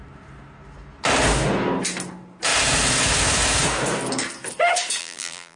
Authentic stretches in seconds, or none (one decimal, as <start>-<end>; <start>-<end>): 0.0-5.0